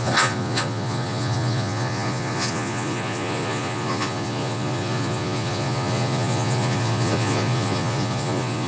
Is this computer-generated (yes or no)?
yes